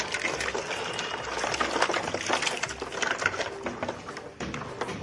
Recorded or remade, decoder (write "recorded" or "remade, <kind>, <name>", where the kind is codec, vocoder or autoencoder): recorded